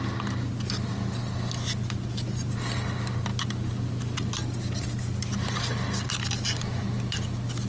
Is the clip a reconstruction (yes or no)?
no